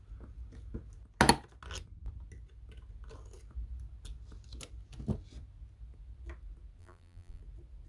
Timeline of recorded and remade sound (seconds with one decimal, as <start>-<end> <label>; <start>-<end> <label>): 0.0-6.8 recorded; 6.8-7.4 remade; 7.4-7.9 recorded